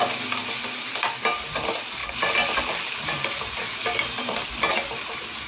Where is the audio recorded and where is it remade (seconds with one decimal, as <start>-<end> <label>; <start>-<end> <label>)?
0.0-5.5 recorded